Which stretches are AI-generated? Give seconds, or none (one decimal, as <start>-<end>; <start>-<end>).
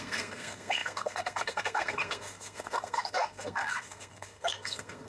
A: 0.0-5.1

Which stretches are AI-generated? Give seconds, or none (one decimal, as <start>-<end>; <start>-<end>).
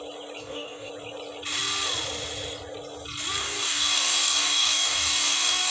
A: 0.4-0.9; 3.4-5.7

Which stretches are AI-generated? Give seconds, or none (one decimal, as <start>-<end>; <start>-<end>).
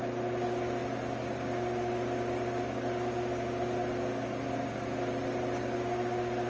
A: none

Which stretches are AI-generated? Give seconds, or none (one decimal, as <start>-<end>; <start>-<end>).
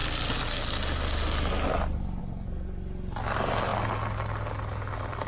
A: none